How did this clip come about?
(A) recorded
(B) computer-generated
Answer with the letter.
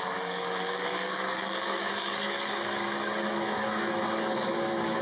B